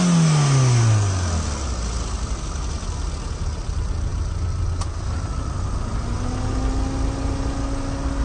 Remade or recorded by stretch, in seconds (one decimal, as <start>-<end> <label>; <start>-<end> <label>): 0.0-8.2 recorded